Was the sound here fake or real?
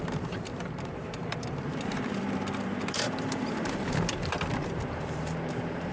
fake